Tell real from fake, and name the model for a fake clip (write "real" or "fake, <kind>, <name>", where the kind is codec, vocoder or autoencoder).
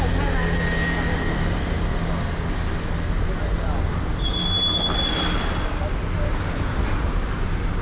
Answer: real